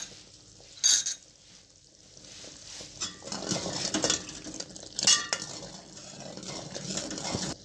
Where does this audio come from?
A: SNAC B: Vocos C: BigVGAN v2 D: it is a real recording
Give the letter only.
D